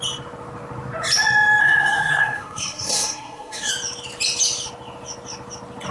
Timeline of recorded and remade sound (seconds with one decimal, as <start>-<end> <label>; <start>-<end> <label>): 0.0-1.6 recorded; 1.6-3.7 remade; 3.7-5.9 recorded